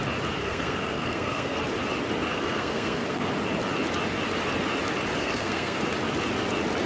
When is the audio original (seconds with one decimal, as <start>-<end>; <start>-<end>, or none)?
0.0-0.4; 1.6-2.3; 3.3-5.2; 5.8-6.9